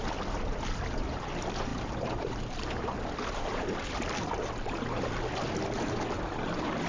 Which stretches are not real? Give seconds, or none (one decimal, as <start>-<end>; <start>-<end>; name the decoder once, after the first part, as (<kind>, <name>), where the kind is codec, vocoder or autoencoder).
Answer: none

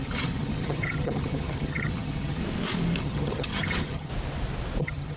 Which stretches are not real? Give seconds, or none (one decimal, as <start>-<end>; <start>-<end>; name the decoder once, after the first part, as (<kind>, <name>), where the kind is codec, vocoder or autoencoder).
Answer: 0.0-2.4 (vocoder, HiFi-GAN); 3.0-4.1; 4.8-5.2